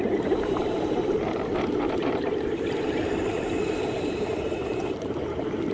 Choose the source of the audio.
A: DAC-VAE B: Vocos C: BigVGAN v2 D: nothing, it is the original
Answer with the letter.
C